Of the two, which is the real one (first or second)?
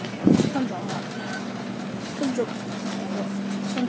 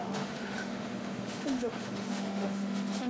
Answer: first